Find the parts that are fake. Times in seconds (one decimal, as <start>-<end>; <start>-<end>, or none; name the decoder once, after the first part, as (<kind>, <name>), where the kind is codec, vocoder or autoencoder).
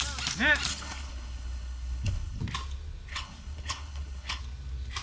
0.7-2.4 (codec, HILCodec); 3.1-4.4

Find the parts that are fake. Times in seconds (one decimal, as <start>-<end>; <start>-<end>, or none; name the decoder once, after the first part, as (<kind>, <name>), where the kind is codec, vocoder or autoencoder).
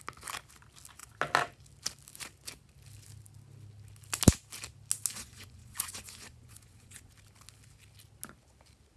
5.1-7.1 (vocoder, Vocos)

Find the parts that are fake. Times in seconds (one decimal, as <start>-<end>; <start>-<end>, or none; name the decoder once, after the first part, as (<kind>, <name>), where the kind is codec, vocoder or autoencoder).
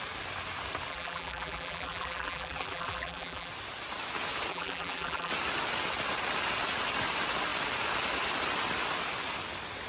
0.9-3.5 (vocoder, BigVGAN v2); 4.5-5.3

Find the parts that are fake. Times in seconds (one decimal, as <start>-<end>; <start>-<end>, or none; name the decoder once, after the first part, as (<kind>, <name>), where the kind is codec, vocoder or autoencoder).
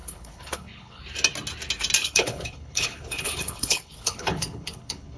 0.0-1.0 (codec, HILCodec); 2.0-5.2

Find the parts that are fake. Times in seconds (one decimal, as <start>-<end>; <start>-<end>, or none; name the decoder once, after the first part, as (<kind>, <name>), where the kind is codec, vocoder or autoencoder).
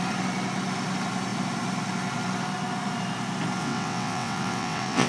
3.6-5.1 (vocoder, WaveNeXt)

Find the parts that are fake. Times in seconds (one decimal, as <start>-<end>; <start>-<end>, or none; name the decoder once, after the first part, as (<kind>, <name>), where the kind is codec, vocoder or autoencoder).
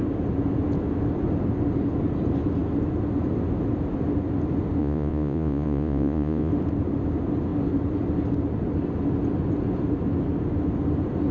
4.8-6.5 (vocoder, Vocos)